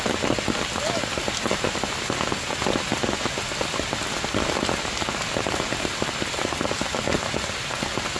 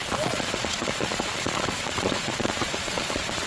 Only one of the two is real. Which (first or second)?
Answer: first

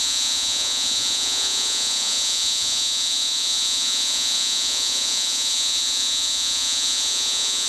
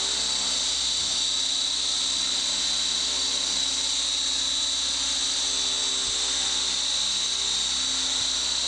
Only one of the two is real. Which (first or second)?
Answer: second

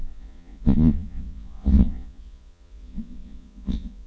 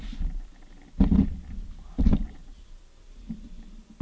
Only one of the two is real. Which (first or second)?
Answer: second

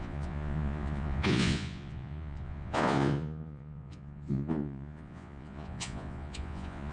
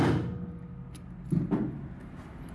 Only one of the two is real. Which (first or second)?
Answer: second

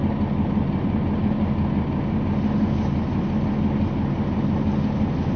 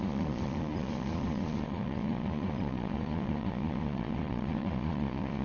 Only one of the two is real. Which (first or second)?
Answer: first